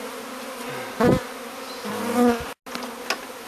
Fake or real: real